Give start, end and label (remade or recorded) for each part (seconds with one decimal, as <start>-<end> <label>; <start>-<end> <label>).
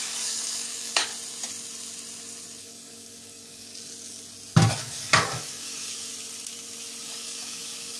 0.0-1.1 remade; 1.1-2.6 recorded; 2.6-3.7 remade; 3.7-4.7 recorded; 4.7-6.1 remade; 6.1-7.0 recorded; 7.0-8.0 remade